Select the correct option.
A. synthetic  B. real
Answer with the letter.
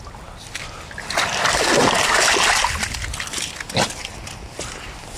B